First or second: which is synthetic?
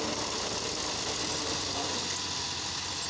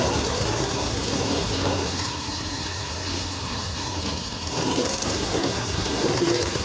second